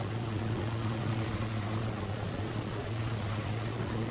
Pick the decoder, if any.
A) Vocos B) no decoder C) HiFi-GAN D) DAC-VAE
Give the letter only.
A